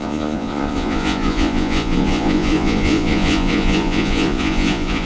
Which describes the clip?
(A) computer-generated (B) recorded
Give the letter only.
A